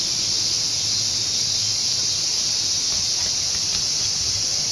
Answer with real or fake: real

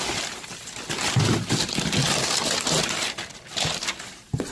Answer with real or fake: real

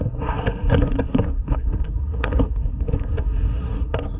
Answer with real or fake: fake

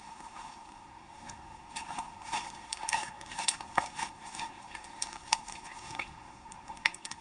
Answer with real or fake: fake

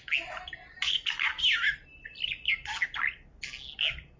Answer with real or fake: real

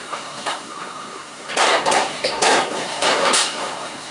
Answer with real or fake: fake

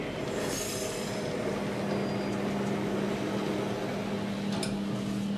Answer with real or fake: real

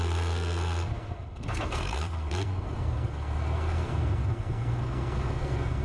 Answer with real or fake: fake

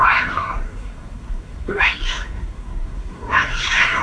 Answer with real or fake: fake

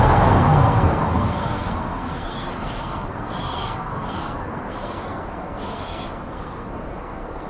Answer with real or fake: fake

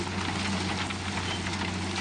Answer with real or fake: real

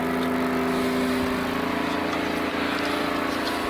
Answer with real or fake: real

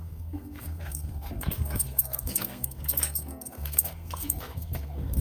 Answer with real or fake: fake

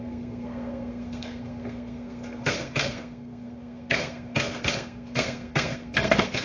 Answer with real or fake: fake